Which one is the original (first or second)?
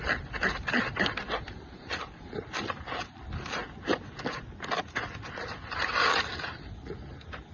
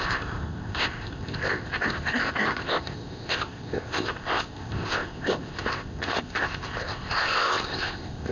first